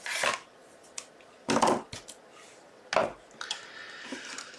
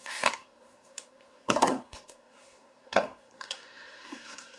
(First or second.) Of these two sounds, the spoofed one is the second